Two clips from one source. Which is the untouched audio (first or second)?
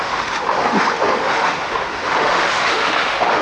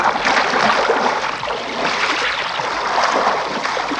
second